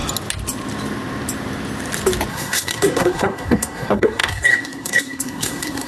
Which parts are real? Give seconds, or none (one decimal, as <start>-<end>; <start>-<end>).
0.0-2.3